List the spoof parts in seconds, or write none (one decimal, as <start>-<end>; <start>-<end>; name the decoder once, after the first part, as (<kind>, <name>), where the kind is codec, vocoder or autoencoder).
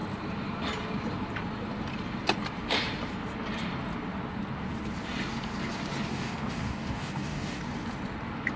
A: 6.1-7.6 (codec, DAC)